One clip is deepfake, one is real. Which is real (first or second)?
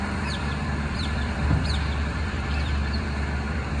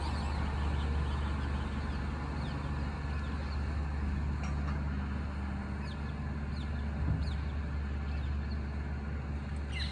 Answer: second